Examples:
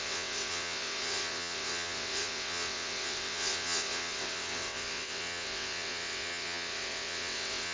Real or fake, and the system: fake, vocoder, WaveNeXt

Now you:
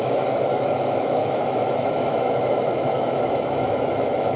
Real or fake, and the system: fake, autoencoder, DAC-VAE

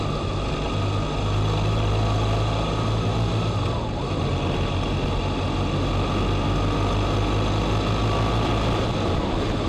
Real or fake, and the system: real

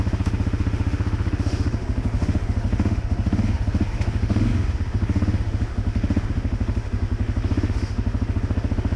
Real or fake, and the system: fake, autoencoder, DAC-VAE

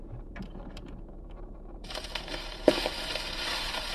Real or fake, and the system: fake, vocoder, BigVGAN v2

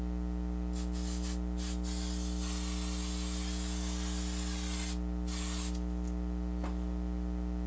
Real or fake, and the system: real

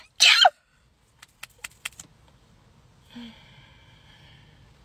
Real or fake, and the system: real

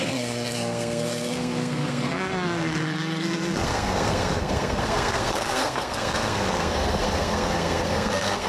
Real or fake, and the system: fake, codec, SNAC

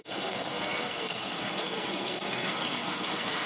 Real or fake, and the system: fake, codec, SNAC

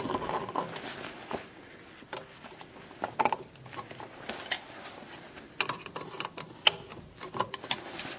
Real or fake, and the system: real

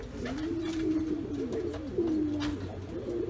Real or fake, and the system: real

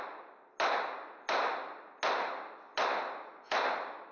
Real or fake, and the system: real